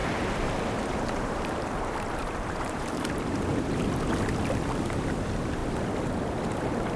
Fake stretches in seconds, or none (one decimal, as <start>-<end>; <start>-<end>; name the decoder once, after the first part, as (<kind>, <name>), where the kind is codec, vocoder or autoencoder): 0.0-3.8 (vocoder, BigVGAN v2)